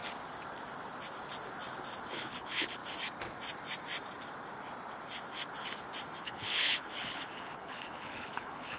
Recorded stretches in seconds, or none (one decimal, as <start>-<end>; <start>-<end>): 0.0-2.1; 2.8-6.2